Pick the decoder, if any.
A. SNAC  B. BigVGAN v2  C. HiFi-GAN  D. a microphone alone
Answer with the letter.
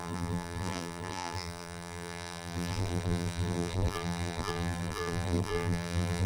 B